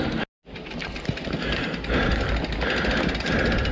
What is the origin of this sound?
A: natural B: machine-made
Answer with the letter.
A